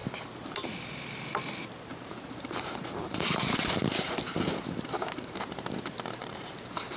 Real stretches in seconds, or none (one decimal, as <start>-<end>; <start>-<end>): 0.0-1.9; 5.4-6.2